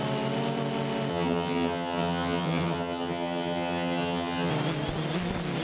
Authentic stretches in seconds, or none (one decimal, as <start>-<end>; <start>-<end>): 0.0-1.1; 4.5-5.6